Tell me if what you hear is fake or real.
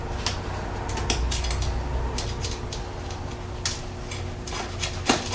real